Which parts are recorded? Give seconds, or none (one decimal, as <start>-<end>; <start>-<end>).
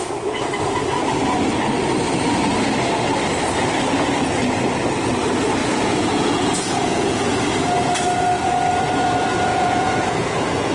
0.0-5.6; 7.4-9.5